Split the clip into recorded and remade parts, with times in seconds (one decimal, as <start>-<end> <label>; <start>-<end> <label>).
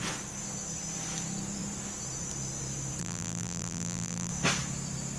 0.0-3.0 recorded; 3.0-4.3 remade; 4.3-5.2 recorded